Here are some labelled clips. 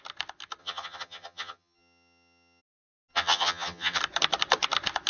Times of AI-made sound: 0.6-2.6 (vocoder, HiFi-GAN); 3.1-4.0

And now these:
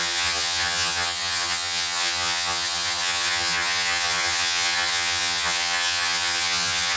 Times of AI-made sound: 0.0-7.0 (vocoder, HiFi-GAN)